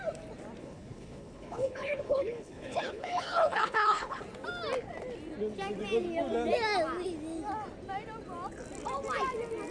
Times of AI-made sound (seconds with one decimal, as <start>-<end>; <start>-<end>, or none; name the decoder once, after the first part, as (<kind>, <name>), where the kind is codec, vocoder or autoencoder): 0.6-4.2 (codec, HILCodec)

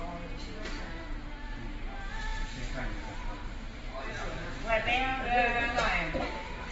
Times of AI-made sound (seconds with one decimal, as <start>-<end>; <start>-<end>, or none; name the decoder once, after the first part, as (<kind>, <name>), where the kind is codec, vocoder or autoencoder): 2.3-4.5 (vocoder, BigVGAN v2)

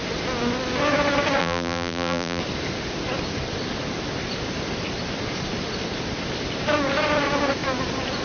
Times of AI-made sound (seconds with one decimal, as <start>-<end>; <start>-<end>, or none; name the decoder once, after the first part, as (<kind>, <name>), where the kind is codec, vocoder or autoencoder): 1.4-2.4 (vocoder, BigVGAN v2)

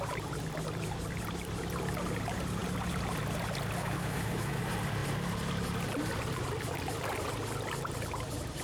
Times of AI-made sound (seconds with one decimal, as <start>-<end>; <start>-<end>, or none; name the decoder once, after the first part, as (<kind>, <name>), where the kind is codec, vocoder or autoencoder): 3.8-4.6 (autoencoder, DAC-VAE)

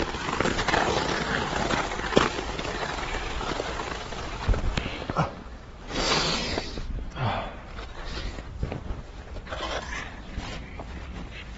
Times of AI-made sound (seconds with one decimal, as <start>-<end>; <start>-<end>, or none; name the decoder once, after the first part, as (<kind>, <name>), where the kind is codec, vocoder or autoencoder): none

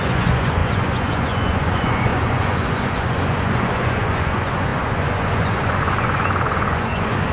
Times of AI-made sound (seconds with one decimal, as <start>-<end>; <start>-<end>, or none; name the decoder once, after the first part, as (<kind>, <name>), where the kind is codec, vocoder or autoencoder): 0.0-7.3 (vocoder, Vocos)

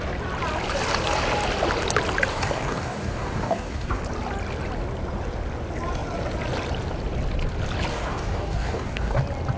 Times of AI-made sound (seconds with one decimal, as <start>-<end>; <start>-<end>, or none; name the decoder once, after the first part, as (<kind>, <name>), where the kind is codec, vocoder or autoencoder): 2.3-4.0 (codec, DAC); 7.9-9.2

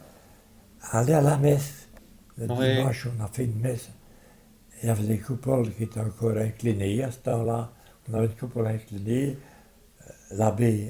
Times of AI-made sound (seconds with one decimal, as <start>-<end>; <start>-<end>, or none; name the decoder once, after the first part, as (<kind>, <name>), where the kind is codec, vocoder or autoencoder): 7.3-8.3 (vocoder, BigVGAN v2)